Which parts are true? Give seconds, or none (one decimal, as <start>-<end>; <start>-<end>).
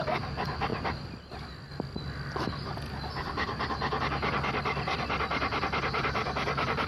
0.0-0.7; 4.0-6.9